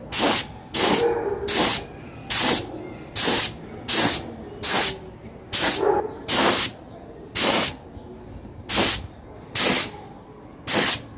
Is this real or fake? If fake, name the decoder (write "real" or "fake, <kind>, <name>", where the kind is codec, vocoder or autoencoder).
real